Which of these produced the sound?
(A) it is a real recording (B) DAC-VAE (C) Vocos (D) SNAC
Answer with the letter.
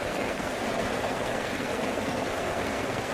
D